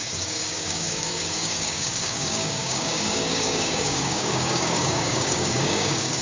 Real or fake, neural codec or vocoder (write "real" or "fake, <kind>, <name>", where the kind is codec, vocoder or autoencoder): fake, codec, DAC